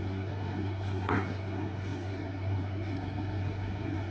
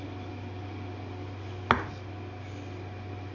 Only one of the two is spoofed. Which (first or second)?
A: first